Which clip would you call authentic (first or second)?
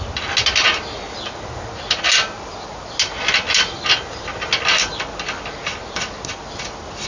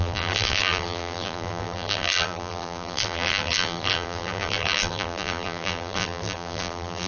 first